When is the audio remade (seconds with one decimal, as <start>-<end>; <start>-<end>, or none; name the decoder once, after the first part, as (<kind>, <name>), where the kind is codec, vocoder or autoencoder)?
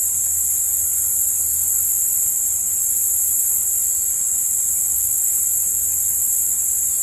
4.8-5.3 (codec, SNAC)